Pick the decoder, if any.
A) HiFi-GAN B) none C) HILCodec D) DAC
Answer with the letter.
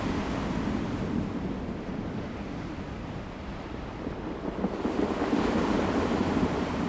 B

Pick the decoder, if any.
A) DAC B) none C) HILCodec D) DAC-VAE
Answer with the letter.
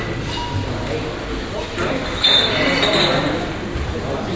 B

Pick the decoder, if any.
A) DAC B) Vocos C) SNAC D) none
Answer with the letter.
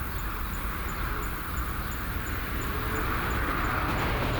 D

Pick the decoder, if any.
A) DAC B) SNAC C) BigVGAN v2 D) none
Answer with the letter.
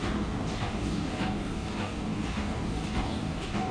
A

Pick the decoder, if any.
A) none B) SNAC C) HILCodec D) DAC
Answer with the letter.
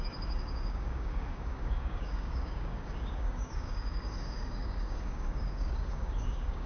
D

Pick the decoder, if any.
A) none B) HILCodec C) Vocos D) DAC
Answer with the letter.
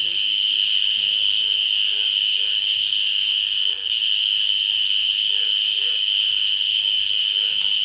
D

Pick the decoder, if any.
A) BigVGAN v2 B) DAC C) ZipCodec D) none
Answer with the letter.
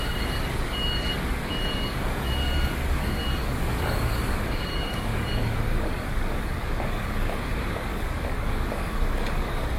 B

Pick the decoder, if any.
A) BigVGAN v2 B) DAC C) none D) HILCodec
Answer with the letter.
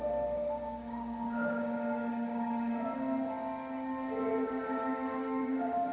B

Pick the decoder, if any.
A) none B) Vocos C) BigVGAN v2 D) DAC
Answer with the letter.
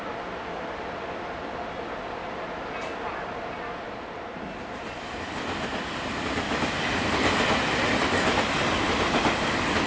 A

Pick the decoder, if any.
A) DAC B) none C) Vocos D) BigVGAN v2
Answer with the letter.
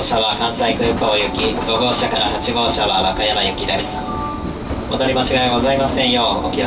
B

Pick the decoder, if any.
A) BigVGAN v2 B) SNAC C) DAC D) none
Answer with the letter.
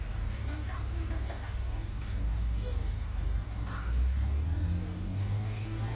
C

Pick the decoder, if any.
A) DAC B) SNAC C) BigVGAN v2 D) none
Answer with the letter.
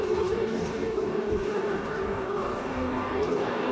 A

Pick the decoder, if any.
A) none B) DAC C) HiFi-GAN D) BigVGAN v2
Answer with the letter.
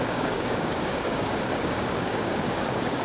B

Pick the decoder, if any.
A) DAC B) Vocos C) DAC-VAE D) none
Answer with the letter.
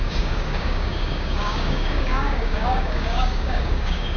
A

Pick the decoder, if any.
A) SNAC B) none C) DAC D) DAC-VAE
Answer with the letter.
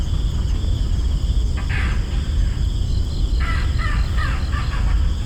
B